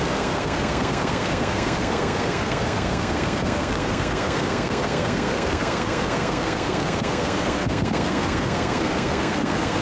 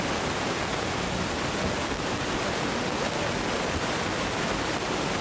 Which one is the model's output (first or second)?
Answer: first